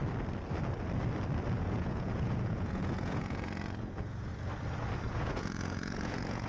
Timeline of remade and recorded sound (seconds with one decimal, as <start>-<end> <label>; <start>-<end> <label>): 0.0-1.6 recorded; 1.6-4.3 remade; 4.3-5.2 recorded; 5.2-6.5 remade